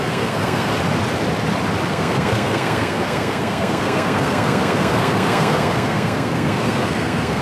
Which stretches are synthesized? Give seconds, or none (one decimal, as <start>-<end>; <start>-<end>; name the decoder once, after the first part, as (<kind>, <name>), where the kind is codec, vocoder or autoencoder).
0.0-0.7 (codec, SNAC); 1.9-7.4